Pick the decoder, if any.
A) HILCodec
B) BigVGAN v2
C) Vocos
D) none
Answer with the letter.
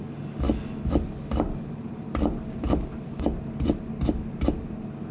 D